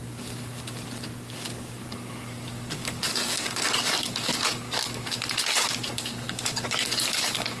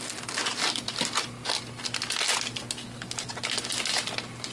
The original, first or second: second